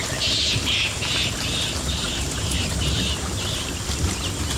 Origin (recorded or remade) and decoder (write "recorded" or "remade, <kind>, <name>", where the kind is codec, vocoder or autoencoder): recorded